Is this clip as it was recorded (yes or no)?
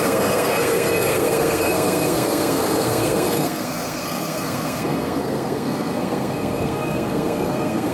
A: no